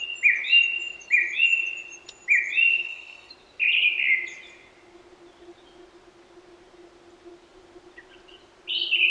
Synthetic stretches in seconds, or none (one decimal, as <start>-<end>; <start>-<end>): 2.7-3.3